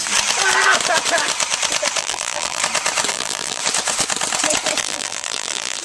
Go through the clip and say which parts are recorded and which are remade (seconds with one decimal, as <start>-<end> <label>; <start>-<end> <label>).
0.0-2.0 recorded; 2.0-2.6 remade; 2.6-3.1 recorded; 3.1-3.6 remade; 3.6-4.8 recorded; 4.8-5.8 remade